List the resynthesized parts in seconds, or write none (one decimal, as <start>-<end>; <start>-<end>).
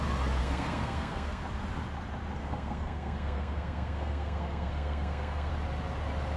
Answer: 0.4-1.4; 2.4-5.5